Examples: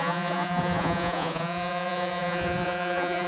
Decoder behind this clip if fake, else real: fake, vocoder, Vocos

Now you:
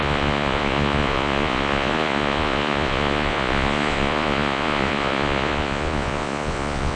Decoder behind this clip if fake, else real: fake, vocoder, Vocos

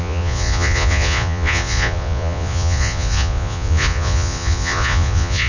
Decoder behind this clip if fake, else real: fake, vocoder, Vocos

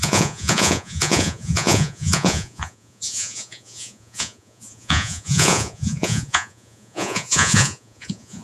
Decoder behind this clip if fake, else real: fake, vocoder, Vocos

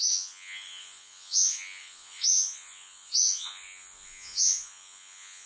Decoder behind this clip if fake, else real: fake, vocoder, Vocos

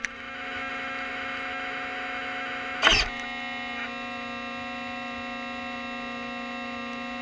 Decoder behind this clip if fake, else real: real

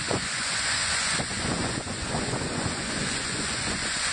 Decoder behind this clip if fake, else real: fake, vocoder, Vocos